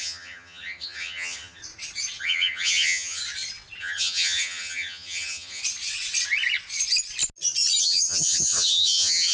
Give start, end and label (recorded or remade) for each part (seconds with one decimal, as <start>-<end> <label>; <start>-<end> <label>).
0.0-1.6 remade; 1.6-2.2 recorded; 2.2-3.2 remade; 3.2-3.8 recorded; 3.8-5.6 remade; 5.6-7.8 recorded; 7.8-9.3 remade